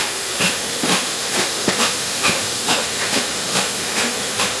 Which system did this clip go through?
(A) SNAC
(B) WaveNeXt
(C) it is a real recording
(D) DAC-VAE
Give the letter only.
D